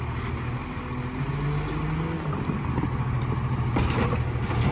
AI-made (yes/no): no